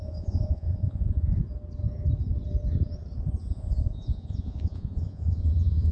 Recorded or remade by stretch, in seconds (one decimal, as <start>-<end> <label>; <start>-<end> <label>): 0.0-1.4 remade; 1.4-3.4 recorded; 3.4-5.9 remade